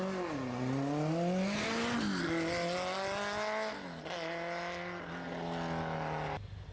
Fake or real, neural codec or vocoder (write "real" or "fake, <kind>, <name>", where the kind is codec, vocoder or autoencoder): real